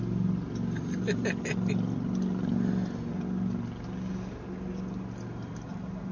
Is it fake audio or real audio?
real